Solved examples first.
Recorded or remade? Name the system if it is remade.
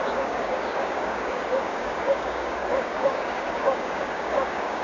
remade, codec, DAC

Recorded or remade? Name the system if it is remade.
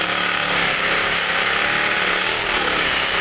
remade, codec, DAC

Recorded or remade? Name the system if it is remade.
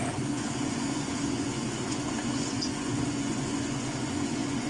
remade, vocoder, Vocos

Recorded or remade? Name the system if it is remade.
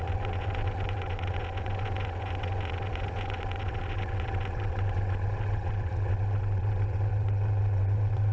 remade, vocoder, WaveNeXt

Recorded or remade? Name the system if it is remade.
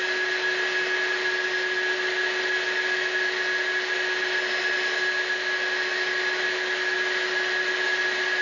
recorded